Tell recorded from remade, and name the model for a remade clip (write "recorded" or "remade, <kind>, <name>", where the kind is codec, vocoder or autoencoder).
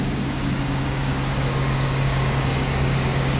remade, codec, DAC